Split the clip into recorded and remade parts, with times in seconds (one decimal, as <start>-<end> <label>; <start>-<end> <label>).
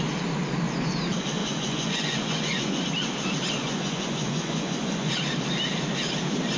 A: 0.0-1.4 recorded; 1.4-2.8 remade; 2.8-3.6 recorded; 3.6-5.1 remade; 5.1-6.6 recorded